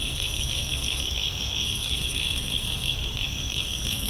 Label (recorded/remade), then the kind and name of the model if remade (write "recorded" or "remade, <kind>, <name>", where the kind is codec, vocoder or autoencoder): remade, codec, SNAC